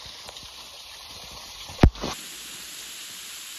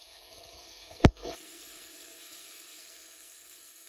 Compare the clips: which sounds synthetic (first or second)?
second